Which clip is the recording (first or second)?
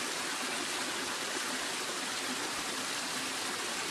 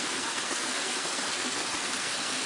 first